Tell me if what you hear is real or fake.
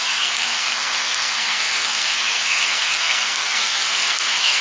fake